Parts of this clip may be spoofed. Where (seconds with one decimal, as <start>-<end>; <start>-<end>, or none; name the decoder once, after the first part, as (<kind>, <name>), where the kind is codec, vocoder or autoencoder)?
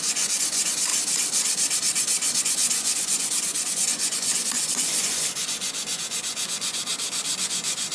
0.0-0.9 (vocoder, Vocos); 2.4-6.9; 7.4-7.9